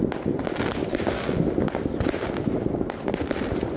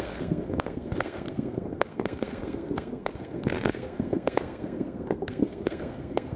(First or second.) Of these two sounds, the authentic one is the first